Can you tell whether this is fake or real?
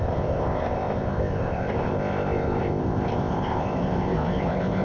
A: fake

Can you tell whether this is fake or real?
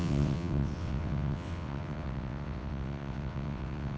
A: fake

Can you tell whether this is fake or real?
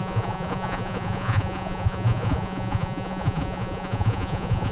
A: fake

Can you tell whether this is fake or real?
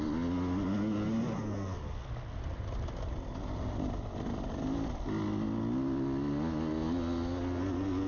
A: real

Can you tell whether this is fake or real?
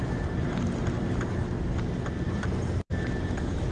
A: real